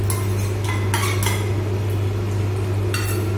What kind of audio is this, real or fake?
real